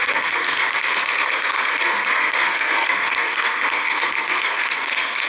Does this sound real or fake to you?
fake